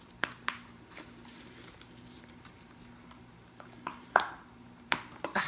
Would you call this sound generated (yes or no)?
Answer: yes